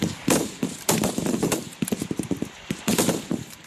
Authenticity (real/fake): fake